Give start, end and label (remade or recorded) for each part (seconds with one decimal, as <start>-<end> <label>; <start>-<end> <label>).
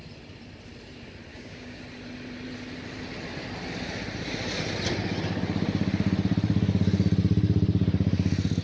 0.0-1.3 recorded; 1.3-1.8 remade; 1.8-8.6 recorded